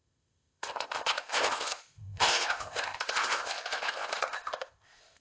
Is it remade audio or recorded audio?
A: remade